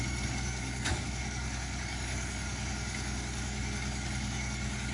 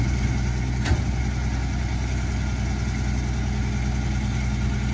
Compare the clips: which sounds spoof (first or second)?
first